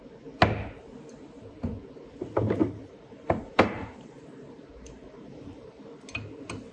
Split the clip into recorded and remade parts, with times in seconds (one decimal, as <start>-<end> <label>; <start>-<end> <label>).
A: 0.0-2.6 recorded; 2.6-5.8 remade; 5.8-6.7 recorded